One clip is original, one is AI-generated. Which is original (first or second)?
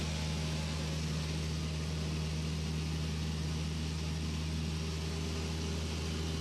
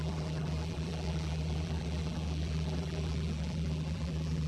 first